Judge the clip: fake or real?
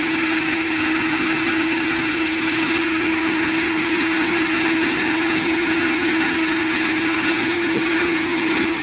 fake